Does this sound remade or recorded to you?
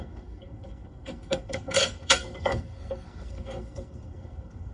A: remade